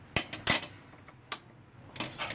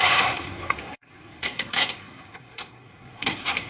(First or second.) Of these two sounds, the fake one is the second